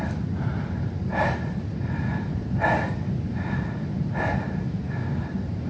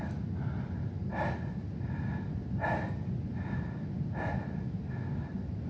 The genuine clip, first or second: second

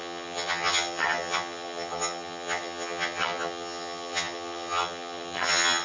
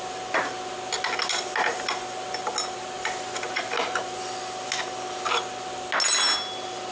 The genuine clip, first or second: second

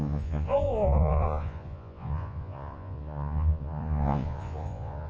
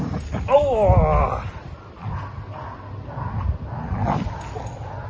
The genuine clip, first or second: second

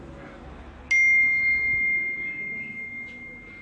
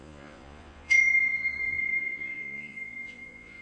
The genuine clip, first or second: first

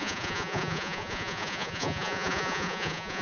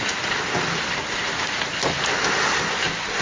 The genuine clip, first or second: second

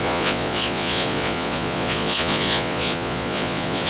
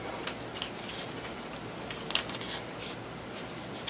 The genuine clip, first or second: second